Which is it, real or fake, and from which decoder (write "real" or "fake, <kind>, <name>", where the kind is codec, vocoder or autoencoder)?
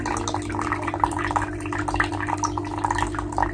real